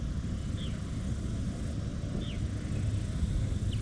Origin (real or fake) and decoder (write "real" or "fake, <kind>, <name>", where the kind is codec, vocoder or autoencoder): real